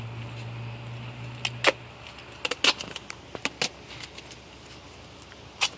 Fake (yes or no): no